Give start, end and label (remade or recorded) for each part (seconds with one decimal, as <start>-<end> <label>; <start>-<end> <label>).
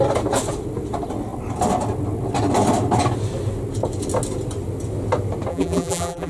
0.0-5.5 recorded; 5.5-6.3 remade